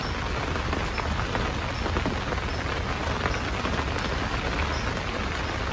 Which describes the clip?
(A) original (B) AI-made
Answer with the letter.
A